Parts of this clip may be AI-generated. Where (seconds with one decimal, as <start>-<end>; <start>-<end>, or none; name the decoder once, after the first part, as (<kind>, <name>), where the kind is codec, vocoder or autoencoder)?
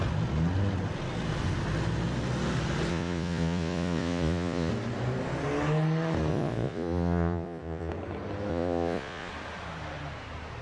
2.9-4.7 (vocoder, Vocos); 6.3-7.9; 8.5-9.3